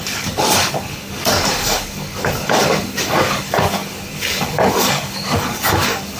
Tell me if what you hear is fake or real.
fake